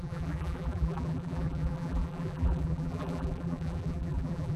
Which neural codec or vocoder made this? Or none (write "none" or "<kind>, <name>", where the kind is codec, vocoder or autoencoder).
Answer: vocoder, BigVGAN v2